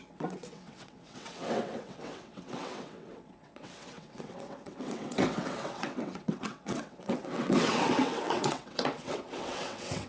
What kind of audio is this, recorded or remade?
remade